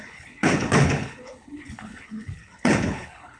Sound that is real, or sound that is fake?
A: fake